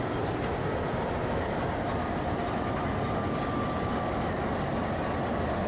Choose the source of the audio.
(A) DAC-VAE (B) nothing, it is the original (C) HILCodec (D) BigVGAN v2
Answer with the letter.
B